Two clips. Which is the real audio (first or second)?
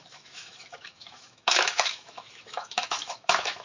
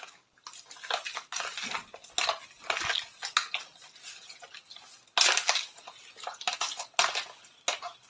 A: second